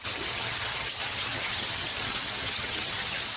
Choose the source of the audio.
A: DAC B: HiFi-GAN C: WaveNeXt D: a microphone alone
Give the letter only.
B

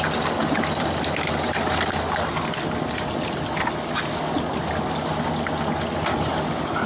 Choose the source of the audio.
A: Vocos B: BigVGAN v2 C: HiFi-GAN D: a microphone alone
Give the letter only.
D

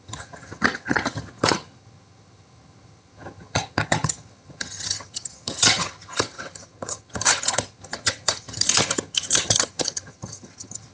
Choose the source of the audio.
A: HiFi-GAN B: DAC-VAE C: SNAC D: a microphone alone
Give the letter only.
A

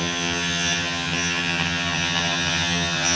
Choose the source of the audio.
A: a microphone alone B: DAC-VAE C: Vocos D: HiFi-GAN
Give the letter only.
D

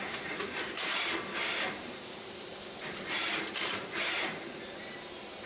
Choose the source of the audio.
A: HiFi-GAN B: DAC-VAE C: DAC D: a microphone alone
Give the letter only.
D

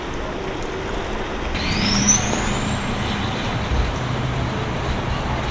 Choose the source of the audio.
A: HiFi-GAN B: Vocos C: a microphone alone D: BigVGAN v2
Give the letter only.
C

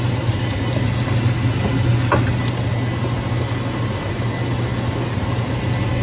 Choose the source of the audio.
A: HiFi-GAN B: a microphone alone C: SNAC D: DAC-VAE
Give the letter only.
B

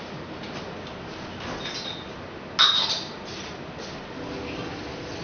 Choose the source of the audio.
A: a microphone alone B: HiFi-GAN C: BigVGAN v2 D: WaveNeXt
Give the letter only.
A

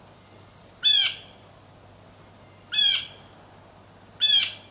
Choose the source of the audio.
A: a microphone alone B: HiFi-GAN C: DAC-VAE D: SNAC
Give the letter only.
A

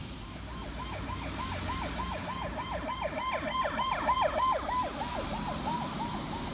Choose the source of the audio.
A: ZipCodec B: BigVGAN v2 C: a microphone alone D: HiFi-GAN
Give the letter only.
C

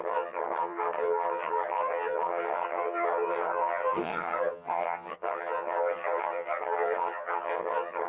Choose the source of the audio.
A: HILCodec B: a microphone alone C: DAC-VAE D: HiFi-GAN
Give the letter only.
D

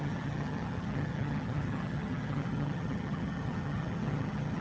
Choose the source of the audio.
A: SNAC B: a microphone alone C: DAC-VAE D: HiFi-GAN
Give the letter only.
D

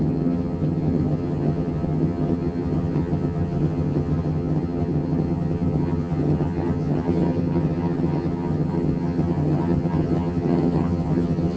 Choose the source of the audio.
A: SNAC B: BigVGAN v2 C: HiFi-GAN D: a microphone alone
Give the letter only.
C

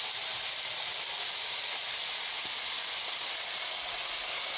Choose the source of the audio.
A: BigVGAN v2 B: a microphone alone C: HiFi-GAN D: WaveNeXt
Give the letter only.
B